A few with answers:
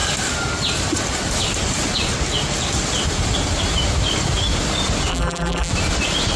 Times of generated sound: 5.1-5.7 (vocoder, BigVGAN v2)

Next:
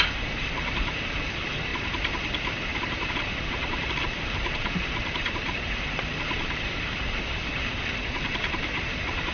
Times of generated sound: 0.0-1.7 (vocoder, BigVGAN v2); 2.8-9.3

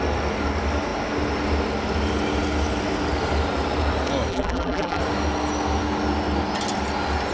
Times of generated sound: 4.3-5.0 (vocoder, BigVGAN v2)

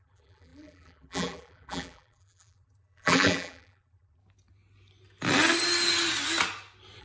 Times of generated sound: 0.0-4.2 (vocoder, BigVGAN v2)

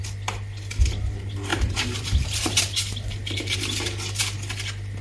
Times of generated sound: 1.5-4.2 (vocoder, BigVGAN v2)